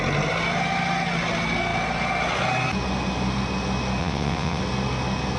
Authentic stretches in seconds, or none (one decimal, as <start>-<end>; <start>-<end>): 0.0-4.0; 4.6-5.4